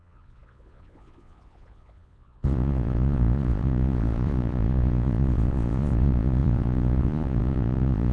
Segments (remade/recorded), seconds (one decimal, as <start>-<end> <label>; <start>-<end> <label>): 0.0-8.1 remade